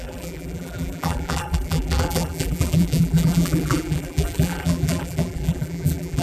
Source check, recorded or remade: remade